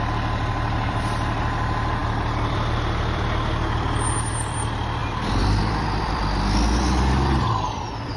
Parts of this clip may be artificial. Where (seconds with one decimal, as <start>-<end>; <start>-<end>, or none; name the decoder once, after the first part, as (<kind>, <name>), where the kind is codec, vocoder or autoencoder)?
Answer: 0.0-8.2 (vocoder, BigVGAN v2)